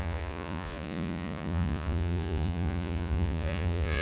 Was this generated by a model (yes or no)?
yes